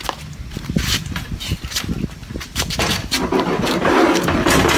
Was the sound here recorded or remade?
remade